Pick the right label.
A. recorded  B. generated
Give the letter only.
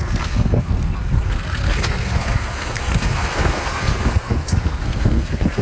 B